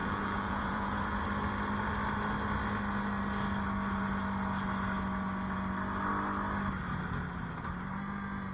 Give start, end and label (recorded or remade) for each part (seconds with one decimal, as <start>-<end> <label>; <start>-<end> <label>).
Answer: 0.0-1.0 remade; 1.0-8.5 recorded